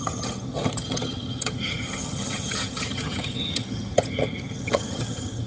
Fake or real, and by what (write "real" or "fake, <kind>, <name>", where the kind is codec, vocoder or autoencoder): fake, vocoder, HiFi-GAN